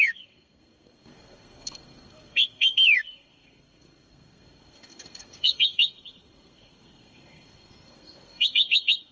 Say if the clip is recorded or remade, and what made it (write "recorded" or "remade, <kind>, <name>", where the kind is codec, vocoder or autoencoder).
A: remade, codec, SNAC